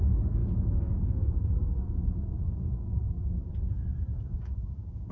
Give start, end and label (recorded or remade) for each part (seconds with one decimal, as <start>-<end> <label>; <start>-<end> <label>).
0.0-0.4 recorded; 0.4-3.5 remade; 3.5-4.1 recorded; 4.1-5.1 remade